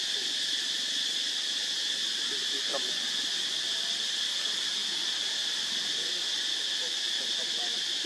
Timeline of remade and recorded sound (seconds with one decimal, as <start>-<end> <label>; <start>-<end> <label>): 0.0-8.1 recorded